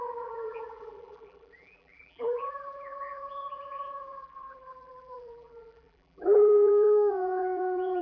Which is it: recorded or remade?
remade